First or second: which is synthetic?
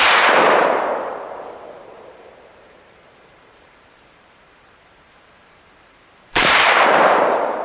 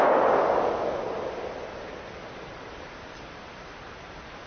first